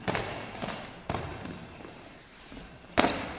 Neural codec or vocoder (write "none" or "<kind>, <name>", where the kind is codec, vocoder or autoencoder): none